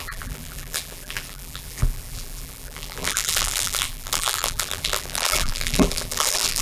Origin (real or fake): fake